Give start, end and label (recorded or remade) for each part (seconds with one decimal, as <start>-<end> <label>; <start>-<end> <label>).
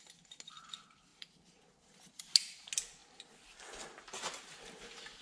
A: 0.0-1.1 recorded; 1.1-2.2 remade; 2.2-5.2 recorded